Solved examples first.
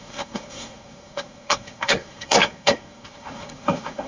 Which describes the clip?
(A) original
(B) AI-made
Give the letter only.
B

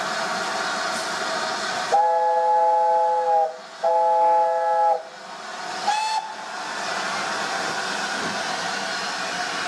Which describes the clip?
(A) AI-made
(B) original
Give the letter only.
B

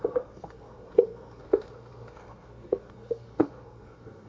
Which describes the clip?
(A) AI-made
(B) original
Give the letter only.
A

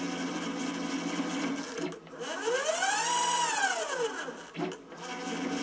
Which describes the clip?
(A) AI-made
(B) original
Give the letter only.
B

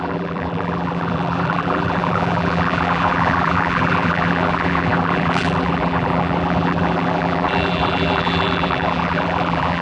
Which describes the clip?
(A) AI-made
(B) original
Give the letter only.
A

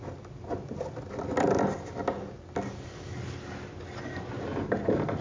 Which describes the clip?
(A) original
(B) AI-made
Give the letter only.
A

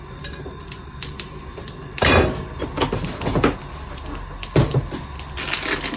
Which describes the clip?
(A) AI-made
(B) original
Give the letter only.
B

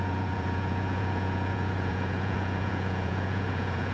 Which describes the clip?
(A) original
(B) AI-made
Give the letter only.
B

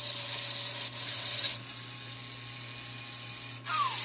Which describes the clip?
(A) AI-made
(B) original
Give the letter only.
B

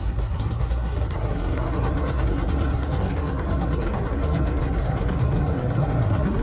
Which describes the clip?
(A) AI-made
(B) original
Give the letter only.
A